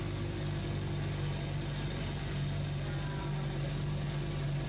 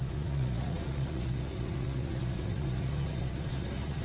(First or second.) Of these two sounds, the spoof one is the second